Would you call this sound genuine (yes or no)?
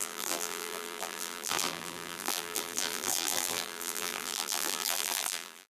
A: no